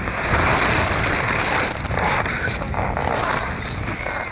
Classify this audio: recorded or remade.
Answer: recorded